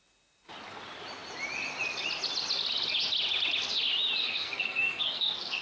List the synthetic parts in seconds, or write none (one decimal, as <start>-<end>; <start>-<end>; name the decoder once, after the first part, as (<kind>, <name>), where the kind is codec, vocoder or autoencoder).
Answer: 4.2-5.6 (codec, SNAC)